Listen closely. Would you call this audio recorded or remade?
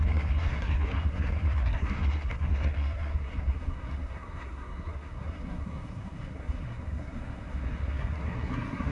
remade